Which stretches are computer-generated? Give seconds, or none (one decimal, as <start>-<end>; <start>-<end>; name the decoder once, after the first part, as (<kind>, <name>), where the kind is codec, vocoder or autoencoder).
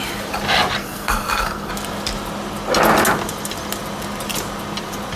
0.8-1.7 (codec, SNAC)